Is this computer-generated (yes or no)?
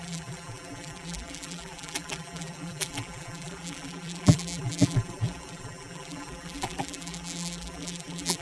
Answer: yes